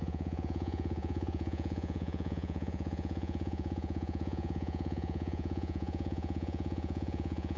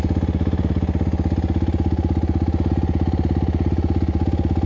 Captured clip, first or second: second